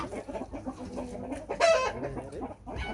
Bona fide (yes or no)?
yes